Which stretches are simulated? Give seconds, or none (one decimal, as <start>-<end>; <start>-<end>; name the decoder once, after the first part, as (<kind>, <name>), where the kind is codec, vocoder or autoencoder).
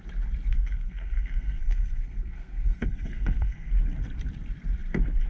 0.5-3.7 (codec, SNAC)